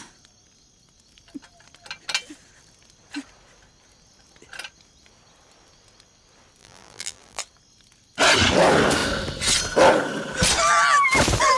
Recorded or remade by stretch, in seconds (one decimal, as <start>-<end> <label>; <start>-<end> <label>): 0.0-6.6 recorded; 6.6-7.4 remade; 7.4-11.6 recorded